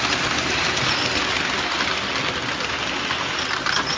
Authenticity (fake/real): real